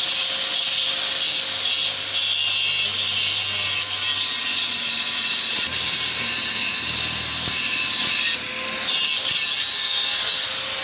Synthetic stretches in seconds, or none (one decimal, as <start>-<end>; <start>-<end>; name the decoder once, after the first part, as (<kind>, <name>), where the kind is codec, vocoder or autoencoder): 4.4-8.5 (vocoder, BigVGAN v2)